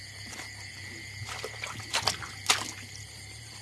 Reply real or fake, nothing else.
real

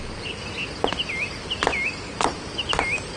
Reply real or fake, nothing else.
real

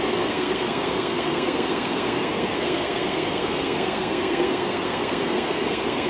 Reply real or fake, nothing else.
fake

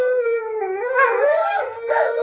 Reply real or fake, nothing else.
fake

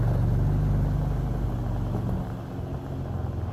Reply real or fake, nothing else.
real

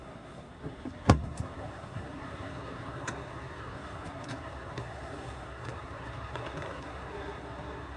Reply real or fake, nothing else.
fake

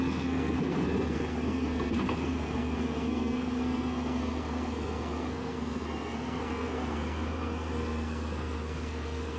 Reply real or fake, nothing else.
fake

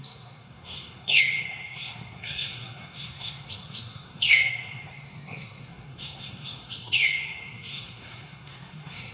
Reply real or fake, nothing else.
fake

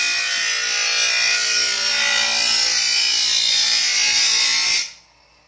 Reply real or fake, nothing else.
real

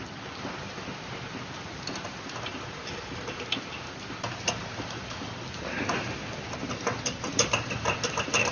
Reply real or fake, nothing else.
real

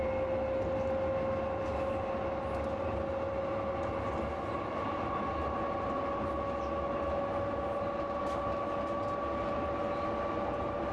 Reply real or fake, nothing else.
real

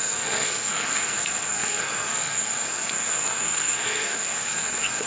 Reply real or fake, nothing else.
fake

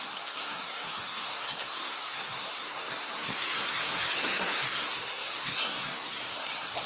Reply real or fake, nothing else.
fake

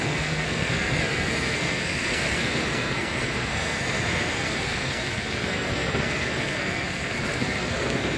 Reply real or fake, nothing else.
fake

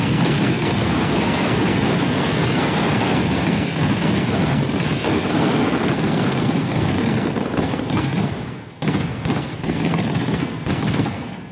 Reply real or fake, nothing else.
fake